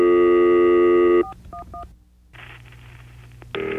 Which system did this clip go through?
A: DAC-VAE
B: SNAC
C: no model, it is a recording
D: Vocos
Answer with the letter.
C